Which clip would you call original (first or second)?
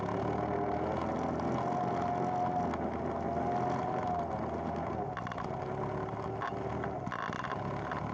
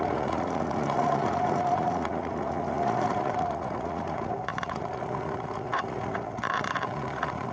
first